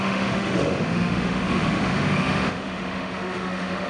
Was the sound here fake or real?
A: fake